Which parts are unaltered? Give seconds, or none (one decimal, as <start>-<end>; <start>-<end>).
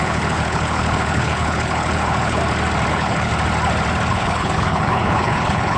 2.4-2.9; 3.3-4.1